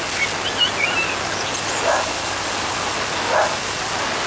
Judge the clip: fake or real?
real